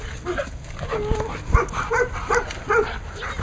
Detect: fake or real real